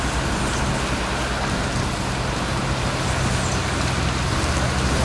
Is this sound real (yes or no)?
yes